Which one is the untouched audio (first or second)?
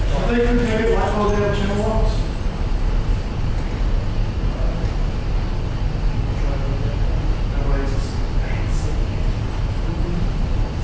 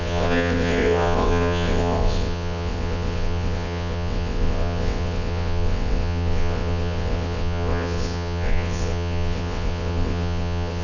first